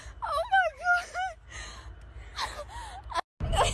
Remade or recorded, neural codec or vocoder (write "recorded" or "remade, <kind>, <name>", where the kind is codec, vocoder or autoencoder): recorded